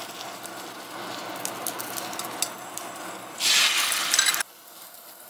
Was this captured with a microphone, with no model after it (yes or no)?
yes